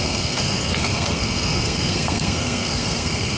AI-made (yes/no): yes